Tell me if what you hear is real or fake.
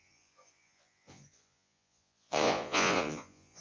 fake